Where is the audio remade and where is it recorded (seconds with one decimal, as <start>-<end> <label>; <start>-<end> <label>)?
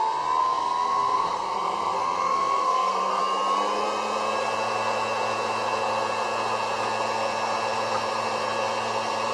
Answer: 0.0-0.4 recorded; 0.4-3.2 remade; 3.2-9.3 recorded